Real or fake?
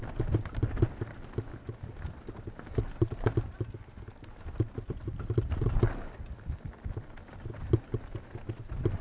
real